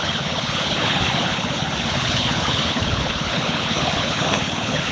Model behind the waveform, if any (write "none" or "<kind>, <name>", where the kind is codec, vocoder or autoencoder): codec, HILCodec